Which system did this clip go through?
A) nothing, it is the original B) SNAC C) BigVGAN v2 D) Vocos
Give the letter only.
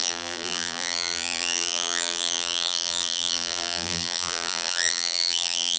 C